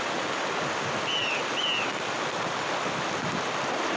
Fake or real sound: real